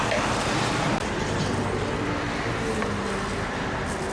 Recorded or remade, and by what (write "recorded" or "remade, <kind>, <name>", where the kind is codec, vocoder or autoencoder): recorded